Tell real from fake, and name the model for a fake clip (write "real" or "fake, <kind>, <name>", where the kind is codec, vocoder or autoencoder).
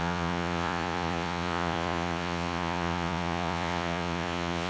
fake, vocoder, Vocos